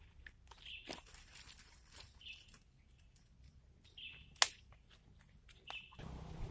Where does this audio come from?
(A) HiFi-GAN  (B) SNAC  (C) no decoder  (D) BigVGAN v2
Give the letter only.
C